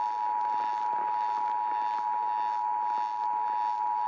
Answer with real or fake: real